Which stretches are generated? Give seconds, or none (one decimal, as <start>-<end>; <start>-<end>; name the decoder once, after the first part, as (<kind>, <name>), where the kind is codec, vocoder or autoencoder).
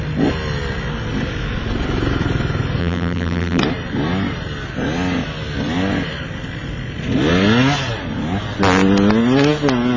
2.8-3.6 (vocoder, BigVGAN v2)